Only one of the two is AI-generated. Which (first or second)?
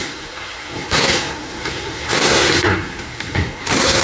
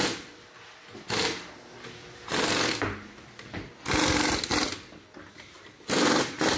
first